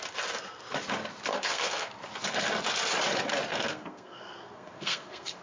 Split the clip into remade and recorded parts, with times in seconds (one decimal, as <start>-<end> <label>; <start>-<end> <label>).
0.0-1.3 recorded; 1.3-1.9 remade; 1.9-3.5 recorded; 3.5-5.4 remade

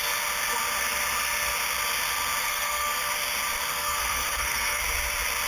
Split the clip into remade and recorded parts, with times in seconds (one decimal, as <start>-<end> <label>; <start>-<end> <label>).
0.0-2.4 recorded; 2.4-3.1 remade; 3.1-3.7 recorded; 3.7-4.8 remade; 4.8-5.5 recorded

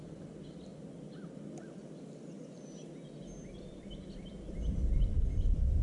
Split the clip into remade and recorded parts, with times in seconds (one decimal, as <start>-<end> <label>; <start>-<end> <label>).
0.0-5.8 recorded

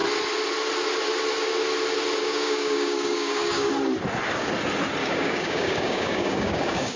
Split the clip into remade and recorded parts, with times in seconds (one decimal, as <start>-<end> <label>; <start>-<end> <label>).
0.0-2.2 recorded; 2.2-3.7 remade; 3.7-5.0 recorded; 5.0-7.0 remade

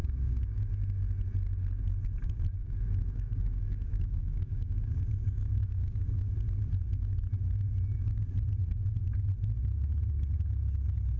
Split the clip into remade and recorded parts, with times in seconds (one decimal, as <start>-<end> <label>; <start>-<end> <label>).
0.0-0.7 remade; 0.7-2.6 recorded; 2.6-6.3 remade; 6.3-11.2 recorded

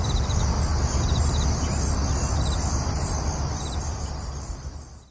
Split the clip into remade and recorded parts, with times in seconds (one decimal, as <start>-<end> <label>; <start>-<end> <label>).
0.0-5.1 recorded

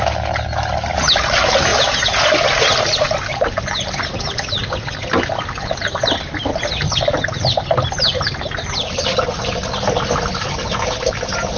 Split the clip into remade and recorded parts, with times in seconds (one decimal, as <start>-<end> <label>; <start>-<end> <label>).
0.0-11.6 recorded

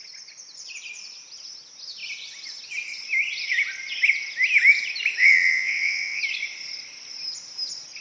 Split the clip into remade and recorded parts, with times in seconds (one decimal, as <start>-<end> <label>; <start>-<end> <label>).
0.0-5.2 recorded; 5.2-6.2 remade; 6.2-8.0 recorded